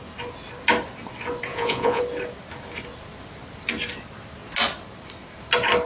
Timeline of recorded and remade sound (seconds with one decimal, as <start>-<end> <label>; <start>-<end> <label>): 0.0-1.5 recorded; 1.5-2.0 remade; 2.0-5.9 recorded